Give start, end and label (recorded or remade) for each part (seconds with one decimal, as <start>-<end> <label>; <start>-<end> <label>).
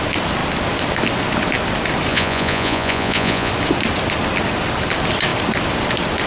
0.0-2.1 recorded; 2.1-3.5 remade; 3.5-6.3 recorded